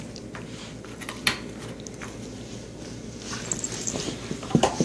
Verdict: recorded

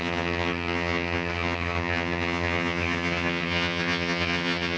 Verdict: remade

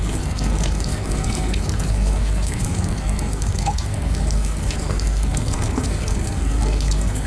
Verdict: remade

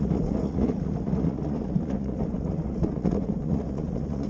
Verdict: remade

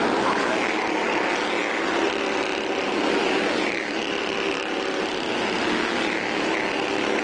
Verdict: recorded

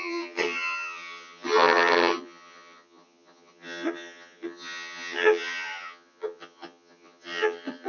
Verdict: remade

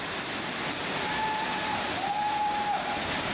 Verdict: remade